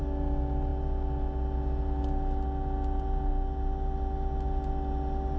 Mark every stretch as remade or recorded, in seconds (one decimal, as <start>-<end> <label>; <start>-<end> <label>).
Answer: 0.0-5.4 recorded